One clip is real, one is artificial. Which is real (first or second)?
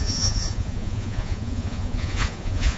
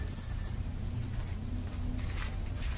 second